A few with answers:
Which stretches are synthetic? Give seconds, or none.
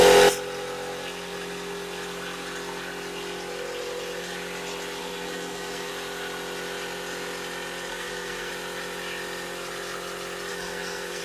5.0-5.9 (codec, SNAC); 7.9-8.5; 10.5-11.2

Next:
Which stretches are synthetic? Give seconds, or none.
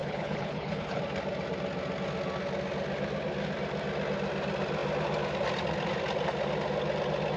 0.0-1.0 (codec, HILCodec)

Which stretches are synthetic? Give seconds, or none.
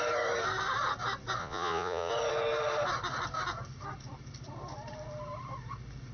1.4-2.1 (vocoder, Vocos)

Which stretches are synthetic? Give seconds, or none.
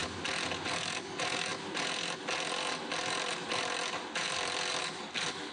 0.7-1.5 (codec, DAC); 4.8-5.5